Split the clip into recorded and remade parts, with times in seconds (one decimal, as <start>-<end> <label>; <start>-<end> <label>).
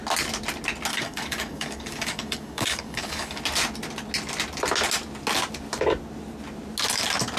0.0-0.9 recorded; 0.9-3.4 remade; 3.4-7.4 recorded